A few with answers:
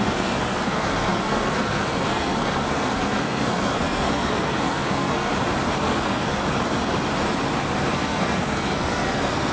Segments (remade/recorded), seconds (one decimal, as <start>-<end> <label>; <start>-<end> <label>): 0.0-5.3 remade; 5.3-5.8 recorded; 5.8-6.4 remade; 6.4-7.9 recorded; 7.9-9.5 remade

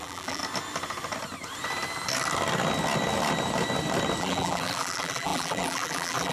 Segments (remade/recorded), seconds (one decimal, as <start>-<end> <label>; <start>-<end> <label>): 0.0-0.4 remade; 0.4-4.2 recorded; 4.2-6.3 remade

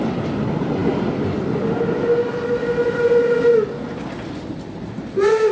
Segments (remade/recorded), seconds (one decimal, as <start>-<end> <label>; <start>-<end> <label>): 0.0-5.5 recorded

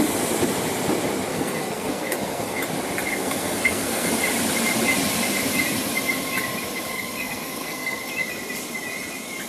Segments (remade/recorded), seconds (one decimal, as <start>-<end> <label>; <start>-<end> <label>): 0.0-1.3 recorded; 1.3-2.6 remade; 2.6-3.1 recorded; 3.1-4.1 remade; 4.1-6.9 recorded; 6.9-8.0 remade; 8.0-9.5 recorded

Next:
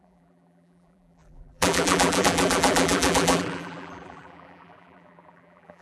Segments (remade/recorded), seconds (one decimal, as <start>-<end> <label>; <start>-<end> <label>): 0.0-5.8 remade

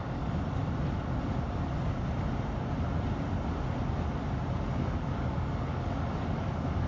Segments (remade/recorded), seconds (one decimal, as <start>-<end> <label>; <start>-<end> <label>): 0.0-0.6 remade; 0.6-4.7 recorded; 4.7-6.9 remade

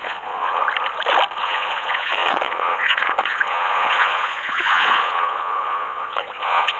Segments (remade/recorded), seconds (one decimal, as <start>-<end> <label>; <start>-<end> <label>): 0.0-0.6 remade; 0.6-1.4 recorded; 1.4-6.8 remade

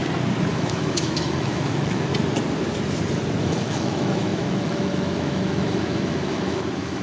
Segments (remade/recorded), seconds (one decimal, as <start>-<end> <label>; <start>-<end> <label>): 0.0-0.5 recorded; 0.5-2.1 remade; 2.1-3.4 recorded; 3.4-7.0 remade